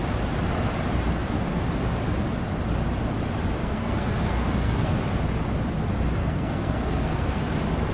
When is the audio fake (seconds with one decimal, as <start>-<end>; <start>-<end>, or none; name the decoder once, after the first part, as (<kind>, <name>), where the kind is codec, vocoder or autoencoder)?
3.6-5.0 (codec, SNAC); 6.2-7.5